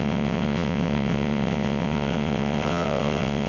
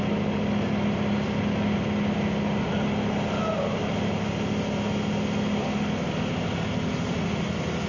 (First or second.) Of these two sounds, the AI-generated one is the first